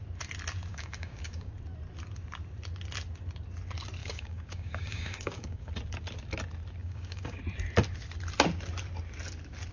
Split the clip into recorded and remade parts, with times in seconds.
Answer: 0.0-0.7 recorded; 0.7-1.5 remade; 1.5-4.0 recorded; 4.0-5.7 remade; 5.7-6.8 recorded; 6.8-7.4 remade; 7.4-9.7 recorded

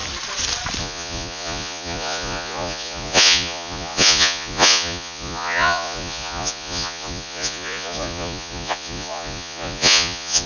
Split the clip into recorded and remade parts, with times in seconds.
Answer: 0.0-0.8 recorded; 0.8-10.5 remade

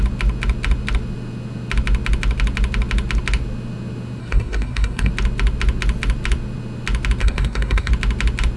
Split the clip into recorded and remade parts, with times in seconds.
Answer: 0.0-4.2 recorded; 4.2-5.1 remade; 5.1-7.2 recorded; 7.2-7.9 remade; 7.9-8.6 recorded